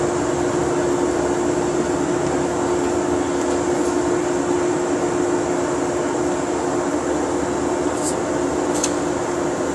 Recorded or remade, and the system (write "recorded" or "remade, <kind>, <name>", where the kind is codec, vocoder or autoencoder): recorded